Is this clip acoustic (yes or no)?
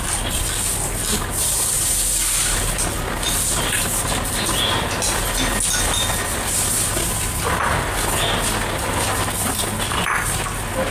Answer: yes